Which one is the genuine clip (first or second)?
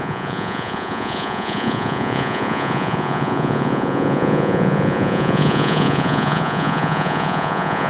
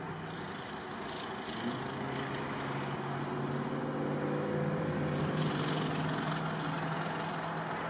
second